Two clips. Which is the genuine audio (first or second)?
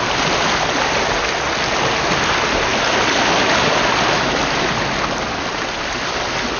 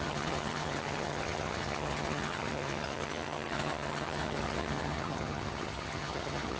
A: first